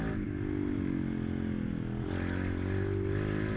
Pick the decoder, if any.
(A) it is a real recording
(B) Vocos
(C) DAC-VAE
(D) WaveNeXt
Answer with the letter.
A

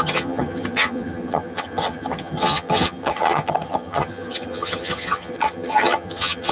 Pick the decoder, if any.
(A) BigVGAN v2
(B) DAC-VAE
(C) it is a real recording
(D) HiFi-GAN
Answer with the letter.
D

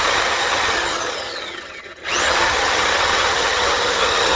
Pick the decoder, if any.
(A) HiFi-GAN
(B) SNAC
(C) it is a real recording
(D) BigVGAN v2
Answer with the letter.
A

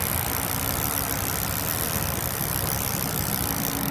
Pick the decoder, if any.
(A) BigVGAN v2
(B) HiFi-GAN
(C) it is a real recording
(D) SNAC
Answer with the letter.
C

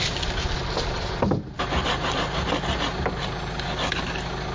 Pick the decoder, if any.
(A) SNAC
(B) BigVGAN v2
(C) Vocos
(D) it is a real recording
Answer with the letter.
D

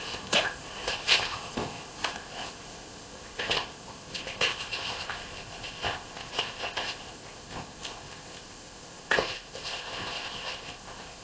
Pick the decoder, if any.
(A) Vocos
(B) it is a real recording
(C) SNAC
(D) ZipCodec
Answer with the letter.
D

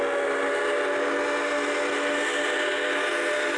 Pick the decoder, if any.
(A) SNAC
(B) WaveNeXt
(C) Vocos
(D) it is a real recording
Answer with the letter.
D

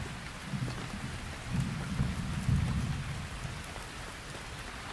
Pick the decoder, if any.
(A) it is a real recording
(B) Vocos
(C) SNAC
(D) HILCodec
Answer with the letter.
A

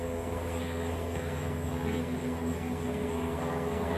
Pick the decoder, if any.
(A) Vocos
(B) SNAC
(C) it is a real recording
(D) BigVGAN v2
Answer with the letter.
B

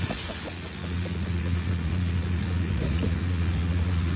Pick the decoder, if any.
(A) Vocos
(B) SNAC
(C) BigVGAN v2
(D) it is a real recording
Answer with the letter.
A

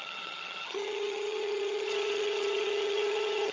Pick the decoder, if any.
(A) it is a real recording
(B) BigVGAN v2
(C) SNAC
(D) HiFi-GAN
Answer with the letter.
D